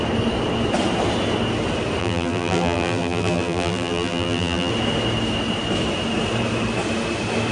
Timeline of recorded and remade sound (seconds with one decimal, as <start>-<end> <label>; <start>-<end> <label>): 0.0-2.0 recorded; 2.0-4.7 remade; 4.7-7.5 recorded